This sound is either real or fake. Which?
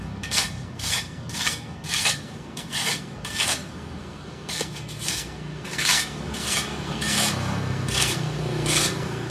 fake